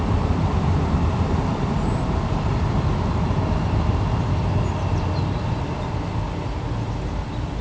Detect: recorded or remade recorded